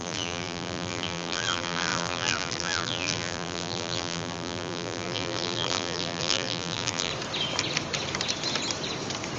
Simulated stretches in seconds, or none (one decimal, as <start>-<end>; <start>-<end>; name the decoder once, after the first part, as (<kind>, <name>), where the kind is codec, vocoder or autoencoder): 0.0-7.1 (vocoder, BigVGAN v2)